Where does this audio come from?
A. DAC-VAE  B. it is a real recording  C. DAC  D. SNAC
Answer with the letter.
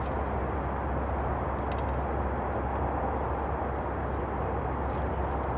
B